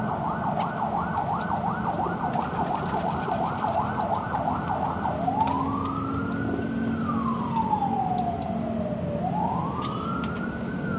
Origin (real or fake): real